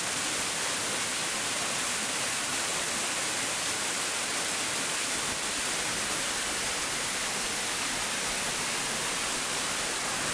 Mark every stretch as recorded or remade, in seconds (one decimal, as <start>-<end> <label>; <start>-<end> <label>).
0.0-10.3 recorded